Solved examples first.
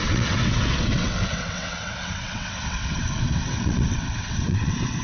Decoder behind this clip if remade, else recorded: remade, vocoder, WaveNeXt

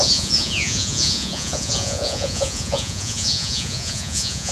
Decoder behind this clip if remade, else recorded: remade, vocoder, Vocos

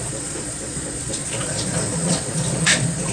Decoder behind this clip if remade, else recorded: remade, vocoder, Vocos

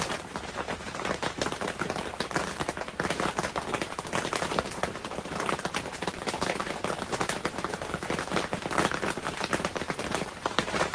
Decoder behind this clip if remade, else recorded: remade, vocoder, BigVGAN v2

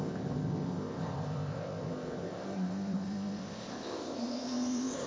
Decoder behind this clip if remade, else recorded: remade, codec, ZipCodec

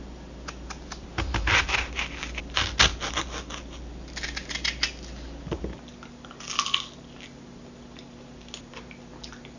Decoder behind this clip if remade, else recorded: recorded